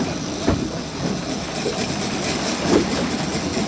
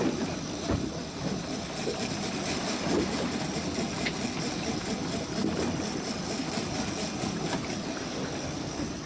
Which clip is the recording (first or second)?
first